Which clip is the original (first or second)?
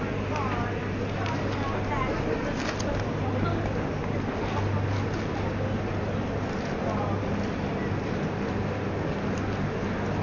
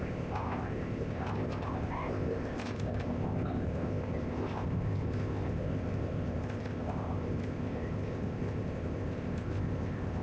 first